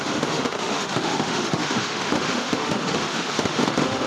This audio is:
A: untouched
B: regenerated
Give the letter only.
B